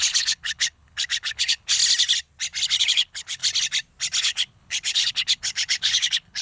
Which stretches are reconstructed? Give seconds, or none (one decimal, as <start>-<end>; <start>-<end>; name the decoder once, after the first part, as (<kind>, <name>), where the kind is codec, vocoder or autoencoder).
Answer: 0.0-1.8 (codec, HILCodec); 2.8-3.4; 4.2-6.4